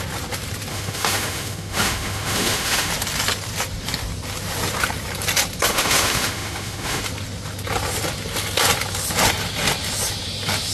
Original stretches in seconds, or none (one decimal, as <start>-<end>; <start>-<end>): 0.0-0.7; 2.9-5.7; 7.0-10.7